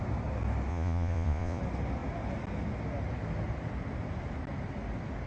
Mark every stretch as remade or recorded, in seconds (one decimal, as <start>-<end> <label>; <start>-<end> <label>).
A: 0.0-0.7 recorded; 0.7-1.6 remade; 1.6-5.3 recorded